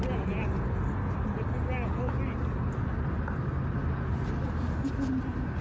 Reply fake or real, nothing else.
real